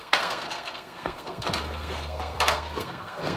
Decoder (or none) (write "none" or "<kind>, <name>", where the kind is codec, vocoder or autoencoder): codec, SNAC